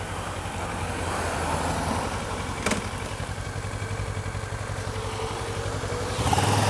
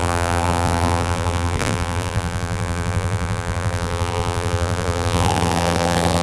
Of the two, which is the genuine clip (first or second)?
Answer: first